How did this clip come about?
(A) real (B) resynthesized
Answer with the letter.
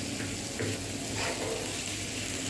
A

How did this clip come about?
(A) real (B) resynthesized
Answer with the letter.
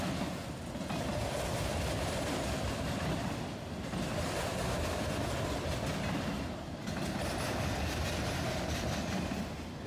A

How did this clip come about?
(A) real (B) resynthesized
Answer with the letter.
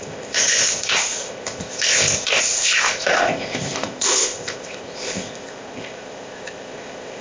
B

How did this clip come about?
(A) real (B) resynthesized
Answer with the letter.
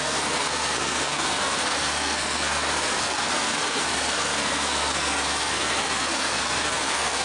B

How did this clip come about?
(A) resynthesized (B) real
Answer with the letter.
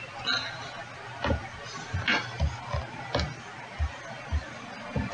B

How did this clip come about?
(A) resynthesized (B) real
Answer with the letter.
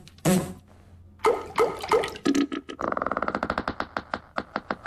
B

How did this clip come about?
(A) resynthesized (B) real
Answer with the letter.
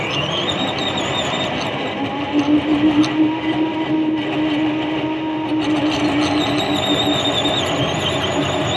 B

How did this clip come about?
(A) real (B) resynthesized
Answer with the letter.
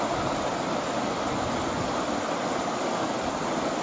A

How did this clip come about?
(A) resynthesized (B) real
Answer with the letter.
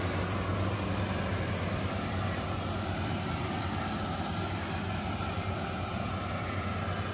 B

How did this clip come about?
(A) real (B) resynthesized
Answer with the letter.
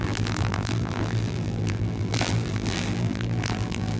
B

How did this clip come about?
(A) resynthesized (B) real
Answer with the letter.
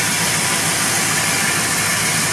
B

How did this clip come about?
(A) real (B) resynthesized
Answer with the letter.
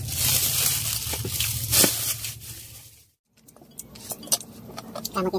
A